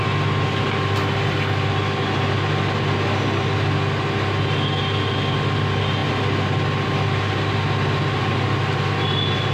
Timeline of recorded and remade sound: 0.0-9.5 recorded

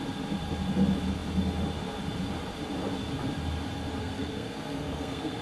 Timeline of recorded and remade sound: 0.0-4.0 recorded; 4.0-5.4 remade

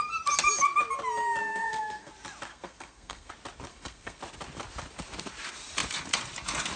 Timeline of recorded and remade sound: 0.0-1.4 recorded; 1.4-2.1 remade; 2.1-2.5 recorded; 2.5-3.3 remade; 3.3-3.7 recorded; 3.7-4.2 remade; 4.2-6.8 recorded

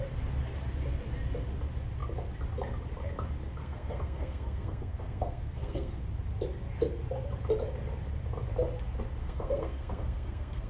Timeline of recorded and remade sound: 0.0-3.6 recorded; 3.6-6.0 remade; 6.0-9.2 recorded; 9.2-10.7 remade

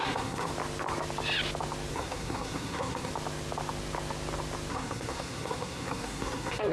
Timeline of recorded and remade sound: 0.0-0.5 remade; 0.5-1.9 recorded; 1.9-3.1 remade; 3.1-4.7 recorded; 4.7-6.7 remade

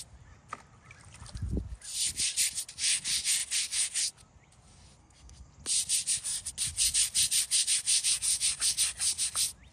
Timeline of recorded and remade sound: 0.0-5.0 recorded; 5.0-5.5 remade; 5.5-9.7 recorded